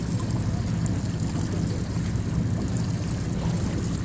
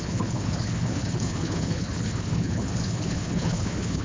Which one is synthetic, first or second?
second